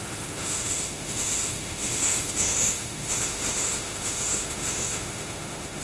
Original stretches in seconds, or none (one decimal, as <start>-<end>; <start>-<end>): none